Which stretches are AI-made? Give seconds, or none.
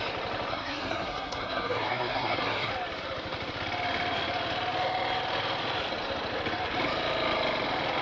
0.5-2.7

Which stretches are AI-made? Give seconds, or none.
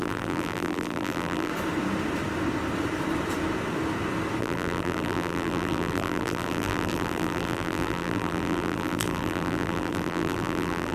0.0-1.5; 4.4-10.9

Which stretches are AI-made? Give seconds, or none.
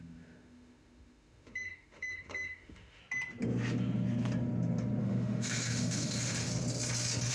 0.0-3.0; 5.0-6.5